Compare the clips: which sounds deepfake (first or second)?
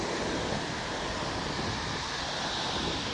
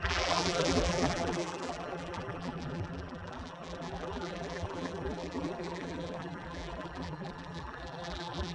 second